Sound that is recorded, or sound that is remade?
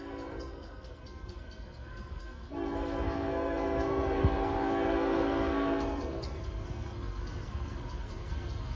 remade